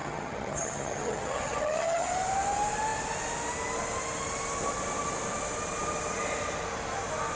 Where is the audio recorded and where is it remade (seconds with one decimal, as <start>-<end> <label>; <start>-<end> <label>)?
0.0-2.1 remade; 2.1-7.4 recorded